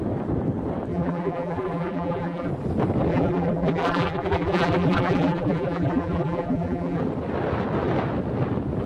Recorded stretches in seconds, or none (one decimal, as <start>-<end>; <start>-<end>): 0.0-0.9; 2.5-3.1; 7.0-8.9